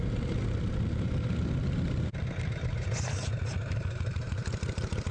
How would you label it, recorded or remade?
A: recorded